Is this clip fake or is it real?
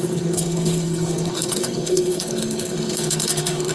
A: fake